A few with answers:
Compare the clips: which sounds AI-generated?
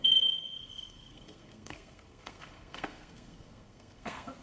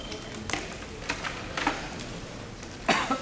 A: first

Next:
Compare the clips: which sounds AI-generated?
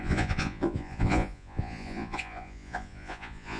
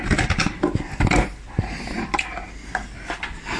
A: first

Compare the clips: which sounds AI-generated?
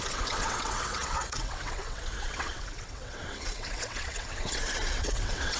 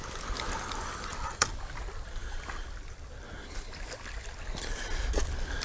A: first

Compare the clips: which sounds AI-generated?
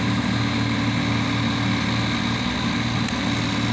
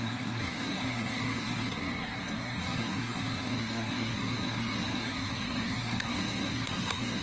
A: second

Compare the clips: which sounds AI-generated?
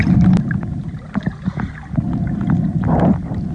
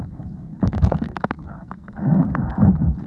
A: second